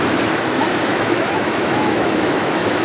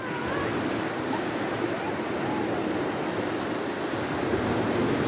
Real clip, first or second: second